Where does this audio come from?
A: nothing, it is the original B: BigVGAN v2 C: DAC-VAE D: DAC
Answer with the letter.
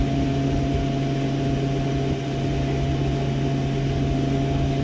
A